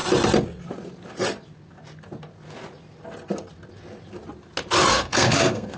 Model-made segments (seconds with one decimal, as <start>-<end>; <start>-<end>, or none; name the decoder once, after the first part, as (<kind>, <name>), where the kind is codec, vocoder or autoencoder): 4.9-5.8 (codec, SNAC)